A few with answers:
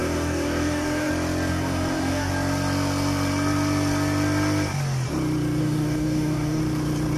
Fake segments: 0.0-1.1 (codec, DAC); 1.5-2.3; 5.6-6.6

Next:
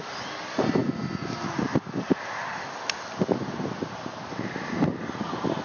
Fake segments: none

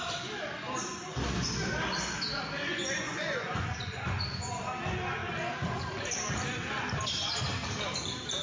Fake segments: 2.6-4.5 (vocoder, Vocos)

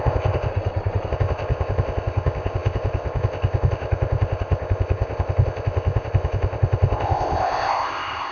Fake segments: 0.0-0.5 (codec, ZipCodec); 1.1-8.3

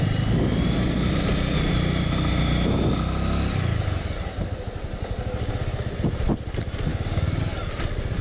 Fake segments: 6.9-7.4 (codec, DAC)

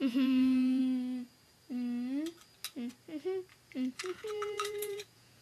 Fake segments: 0.0-0.8 (vocoder, Vocos); 4.0-5.4

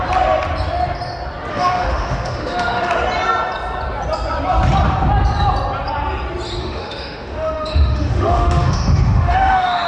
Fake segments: 1.5-2.9 (autoencoder, DAC-VAE); 6.6-9.9